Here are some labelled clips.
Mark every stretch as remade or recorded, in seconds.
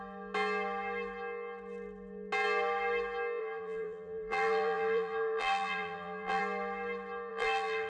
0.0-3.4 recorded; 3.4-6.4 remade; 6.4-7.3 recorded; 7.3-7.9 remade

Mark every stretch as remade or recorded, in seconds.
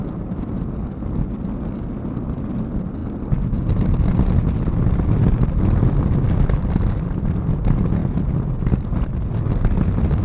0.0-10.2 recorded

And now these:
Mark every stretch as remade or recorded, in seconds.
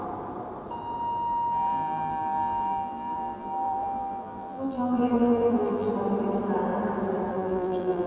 0.0-1.7 recorded; 1.7-5.9 remade; 5.9-7.3 recorded; 7.3-8.1 remade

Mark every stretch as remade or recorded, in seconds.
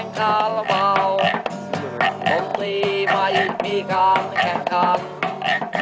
0.0-2.5 recorded; 2.5-5.8 remade